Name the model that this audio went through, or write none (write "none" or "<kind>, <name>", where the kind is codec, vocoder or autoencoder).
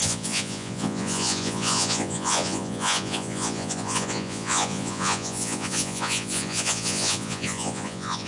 vocoder, Vocos